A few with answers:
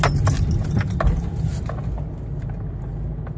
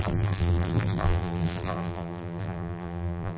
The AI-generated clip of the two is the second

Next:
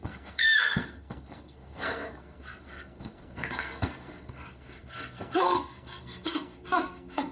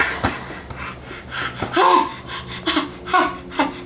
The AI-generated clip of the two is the first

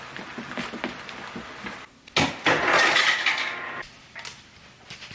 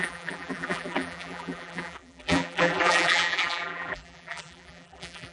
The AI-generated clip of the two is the second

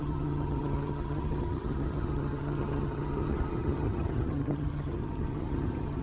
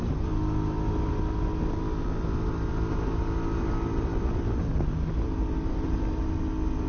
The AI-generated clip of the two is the first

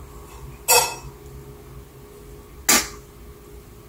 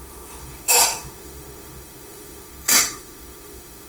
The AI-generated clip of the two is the second